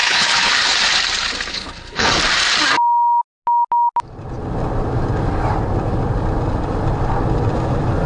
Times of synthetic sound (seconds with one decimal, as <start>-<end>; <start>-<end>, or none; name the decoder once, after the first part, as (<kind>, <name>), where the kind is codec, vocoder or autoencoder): 0.0-0.5 (codec, HILCodec); 1.5-2.2